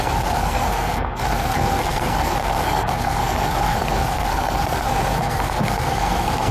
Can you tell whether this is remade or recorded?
remade